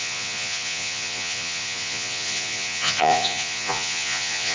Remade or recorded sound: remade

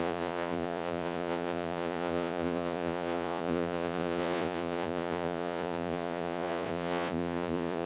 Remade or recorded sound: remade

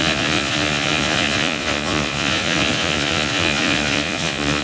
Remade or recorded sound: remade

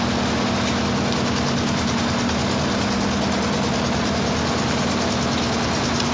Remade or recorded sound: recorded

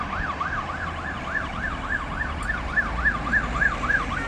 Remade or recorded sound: recorded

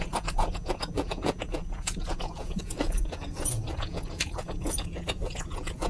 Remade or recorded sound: remade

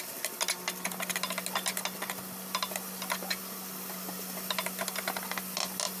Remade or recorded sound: recorded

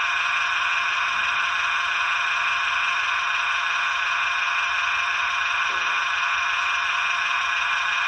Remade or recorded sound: recorded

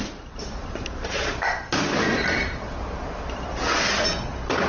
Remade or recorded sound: recorded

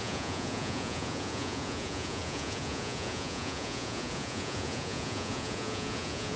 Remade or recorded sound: remade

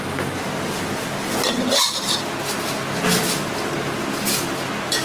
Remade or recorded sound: recorded